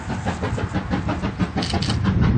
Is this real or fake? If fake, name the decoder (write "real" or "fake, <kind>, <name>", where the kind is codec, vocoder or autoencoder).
real